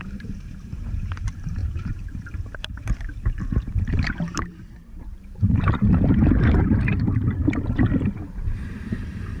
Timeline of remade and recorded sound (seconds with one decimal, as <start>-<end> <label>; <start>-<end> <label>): 0.0-7.4 remade; 7.4-8.2 recorded; 8.2-9.4 remade